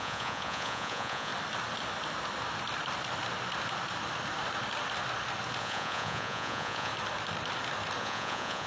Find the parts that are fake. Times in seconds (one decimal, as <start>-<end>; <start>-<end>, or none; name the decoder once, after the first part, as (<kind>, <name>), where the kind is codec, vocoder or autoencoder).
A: 0.0-1.3 (vocoder, Vocos); 5.6-6.9; 8.0-8.7